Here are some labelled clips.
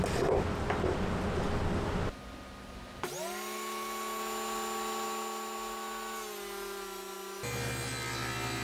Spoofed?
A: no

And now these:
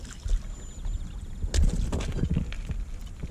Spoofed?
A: no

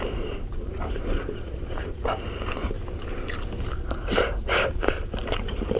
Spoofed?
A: yes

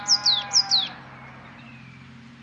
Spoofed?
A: yes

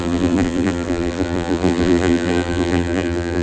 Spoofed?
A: yes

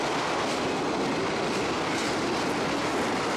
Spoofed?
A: no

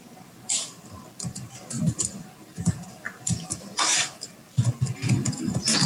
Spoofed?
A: yes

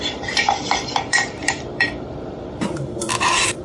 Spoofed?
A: yes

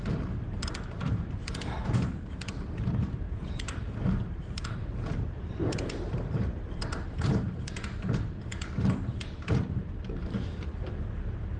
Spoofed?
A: yes